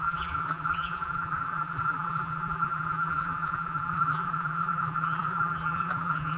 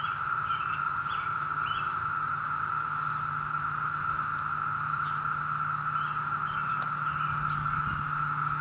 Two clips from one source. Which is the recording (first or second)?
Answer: second